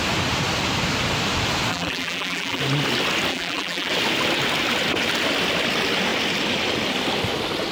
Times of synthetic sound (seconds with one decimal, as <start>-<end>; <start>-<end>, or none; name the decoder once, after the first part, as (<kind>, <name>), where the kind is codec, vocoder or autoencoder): 1.7-2.6 (vocoder, BigVGAN v2); 3.3-3.9